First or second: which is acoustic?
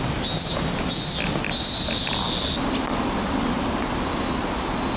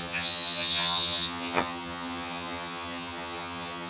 first